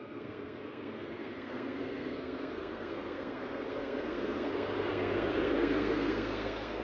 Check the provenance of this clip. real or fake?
fake